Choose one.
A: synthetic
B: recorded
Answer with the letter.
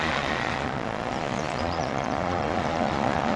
A